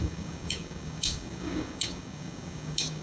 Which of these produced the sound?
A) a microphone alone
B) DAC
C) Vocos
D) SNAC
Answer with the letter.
B